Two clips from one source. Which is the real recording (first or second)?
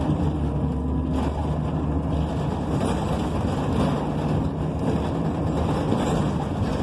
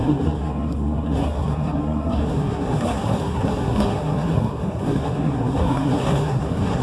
first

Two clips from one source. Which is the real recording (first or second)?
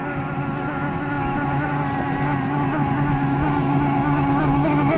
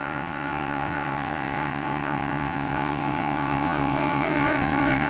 first